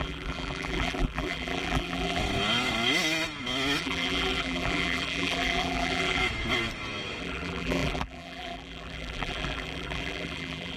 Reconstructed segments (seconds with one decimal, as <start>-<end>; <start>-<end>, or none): 0.0-2.2; 3.8-6.2; 7.2-10.8